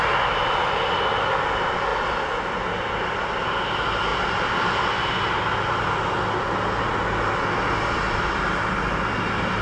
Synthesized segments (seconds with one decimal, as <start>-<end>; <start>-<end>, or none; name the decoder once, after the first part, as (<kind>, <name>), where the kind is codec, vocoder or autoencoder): none